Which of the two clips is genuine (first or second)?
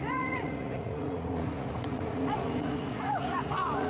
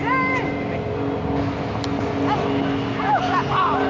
second